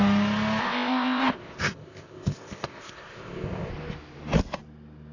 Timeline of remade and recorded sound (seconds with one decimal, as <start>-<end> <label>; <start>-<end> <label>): 0.0-0.6 recorded; 0.6-3.7 remade; 3.7-5.1 recorded